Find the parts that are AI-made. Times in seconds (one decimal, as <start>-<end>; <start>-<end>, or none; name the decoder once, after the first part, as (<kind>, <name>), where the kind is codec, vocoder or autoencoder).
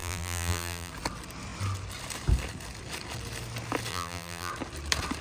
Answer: 0.0-0.9 (vocoder, BigVGAN v2); 3.9-4.5